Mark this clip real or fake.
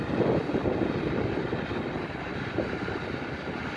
real